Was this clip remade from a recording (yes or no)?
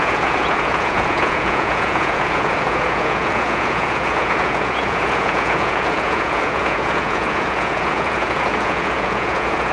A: yes